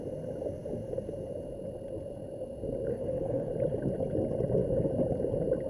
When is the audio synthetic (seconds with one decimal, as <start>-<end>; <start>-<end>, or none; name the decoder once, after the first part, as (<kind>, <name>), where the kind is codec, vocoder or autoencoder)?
2.9-3.5 (codec, SNAC)